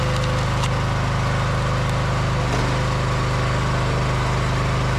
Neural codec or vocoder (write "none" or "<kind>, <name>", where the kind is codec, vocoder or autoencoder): none